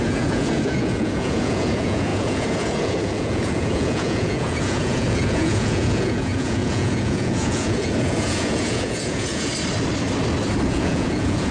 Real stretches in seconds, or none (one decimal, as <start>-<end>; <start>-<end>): 9.5-10.7